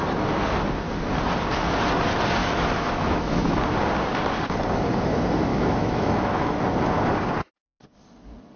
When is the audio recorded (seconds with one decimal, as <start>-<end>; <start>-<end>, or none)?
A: 0.0-2.4; 3.6-5.5; 6.6-8.6